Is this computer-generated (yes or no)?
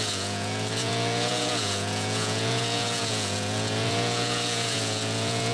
yes